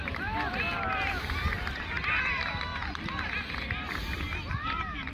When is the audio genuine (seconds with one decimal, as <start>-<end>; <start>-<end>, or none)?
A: 0.0-5.1